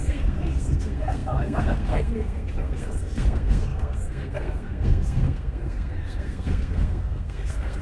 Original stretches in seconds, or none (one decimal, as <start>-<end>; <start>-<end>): none